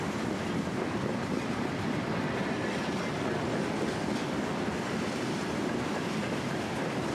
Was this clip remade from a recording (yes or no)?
no